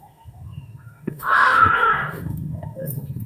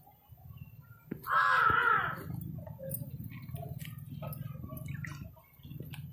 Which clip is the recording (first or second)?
second